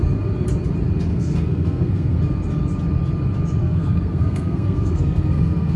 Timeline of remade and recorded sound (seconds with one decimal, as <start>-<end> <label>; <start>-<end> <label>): 0.0-1.1 recorded; 1.1-2.2 remade; 2.2-3.6 recorded; 3.6-5.8 remade